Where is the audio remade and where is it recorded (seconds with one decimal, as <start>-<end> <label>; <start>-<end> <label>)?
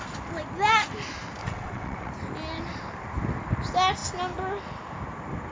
0.0-1.4 recorded; 1.4-2.1 remade; 2.1-5.5 recorded